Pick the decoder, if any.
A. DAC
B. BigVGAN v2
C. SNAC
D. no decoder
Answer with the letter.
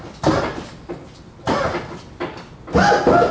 D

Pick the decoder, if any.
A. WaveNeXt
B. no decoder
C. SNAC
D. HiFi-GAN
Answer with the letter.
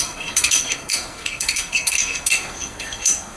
C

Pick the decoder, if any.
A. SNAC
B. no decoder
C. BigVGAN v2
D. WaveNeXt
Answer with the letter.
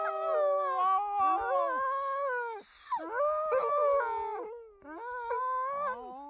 B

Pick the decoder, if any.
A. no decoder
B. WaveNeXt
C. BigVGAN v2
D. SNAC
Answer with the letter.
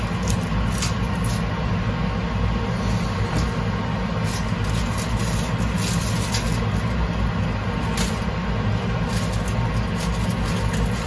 A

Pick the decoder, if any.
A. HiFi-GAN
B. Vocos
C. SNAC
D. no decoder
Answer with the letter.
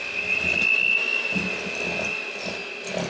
D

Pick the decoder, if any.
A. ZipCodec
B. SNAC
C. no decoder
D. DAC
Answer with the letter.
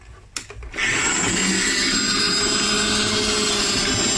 C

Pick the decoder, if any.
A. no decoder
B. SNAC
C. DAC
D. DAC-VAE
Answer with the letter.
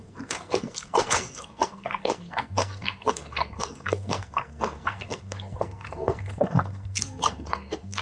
B